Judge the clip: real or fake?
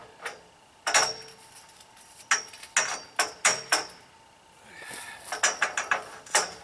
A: real